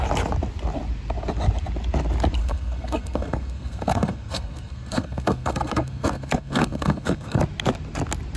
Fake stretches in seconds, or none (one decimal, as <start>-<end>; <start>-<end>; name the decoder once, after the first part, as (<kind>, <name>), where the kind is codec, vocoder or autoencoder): 2.4-7.4 (codec, SNAC)